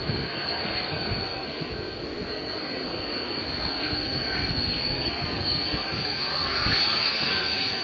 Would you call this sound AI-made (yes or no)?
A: yes